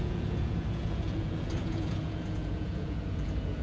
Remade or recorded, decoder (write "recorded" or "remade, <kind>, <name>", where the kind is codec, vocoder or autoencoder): remade, vocoder, Vocos